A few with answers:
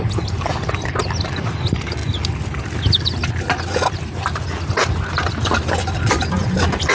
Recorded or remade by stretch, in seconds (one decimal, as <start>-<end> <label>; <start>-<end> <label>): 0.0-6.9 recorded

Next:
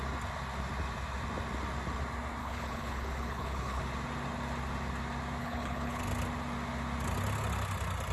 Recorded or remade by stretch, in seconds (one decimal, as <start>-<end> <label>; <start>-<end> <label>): 0.0-2.4 recorded; 2.4-3.8 remade; 3.8-5.4 recorded; 5.4-6.0 remade; 6.0-8.1 recorded

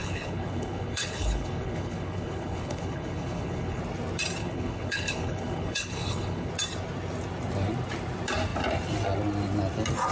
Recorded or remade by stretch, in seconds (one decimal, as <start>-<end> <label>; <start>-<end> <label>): 0.0-3.8 remade; 3.8-4.4 recorded; 4.4-6.5 remade; 6.5-10.1 recorded